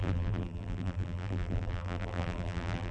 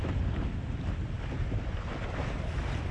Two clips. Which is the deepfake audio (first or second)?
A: first